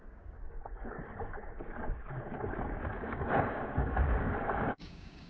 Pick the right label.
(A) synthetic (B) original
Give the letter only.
A